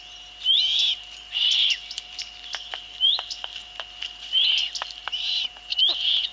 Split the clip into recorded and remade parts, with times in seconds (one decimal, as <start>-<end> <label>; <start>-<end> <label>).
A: 0.0-0.7 recorded; 0.7-4.5 remade; 4.5-5.0 recorded; 5.0-5.5 remade; 5.5-6.3 recorded

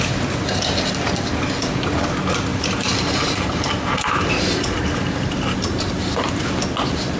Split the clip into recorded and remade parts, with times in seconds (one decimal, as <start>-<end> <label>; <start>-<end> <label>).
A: 0.0-2.5 recorded; 2.5-6.5 remade; 6.5-7.2 recorded

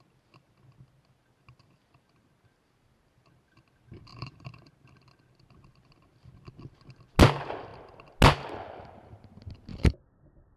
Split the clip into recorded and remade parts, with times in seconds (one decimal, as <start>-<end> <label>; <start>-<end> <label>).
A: 0.0-4.1 recorded; 4.1-4.7 remade; 4.7-9.7 recorded; 9.7-10.6 remade

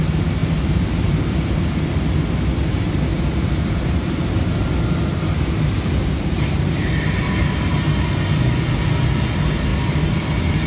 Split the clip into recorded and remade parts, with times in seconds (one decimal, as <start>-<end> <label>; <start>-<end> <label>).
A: 0.0-0.4 recorded; 0.4-1.6 remade; 1.6-3.1 recorded; 3.1-7.1 remade; 7.1-10.7 recorded

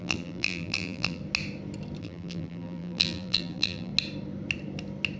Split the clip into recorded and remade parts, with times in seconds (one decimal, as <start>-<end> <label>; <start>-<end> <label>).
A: 0.0-1.2 remade; 1.2-2.0 recorded; 2.0-3.9 remade; 3.9-5.2 recorded